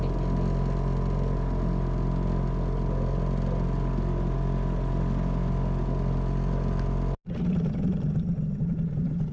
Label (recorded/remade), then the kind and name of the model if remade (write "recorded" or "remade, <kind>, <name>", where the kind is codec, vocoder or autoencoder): recorded